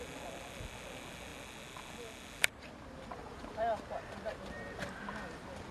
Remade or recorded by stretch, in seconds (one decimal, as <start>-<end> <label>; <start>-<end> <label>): 0.0-5.7 recorded